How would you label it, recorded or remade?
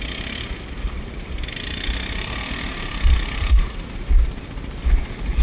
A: recorded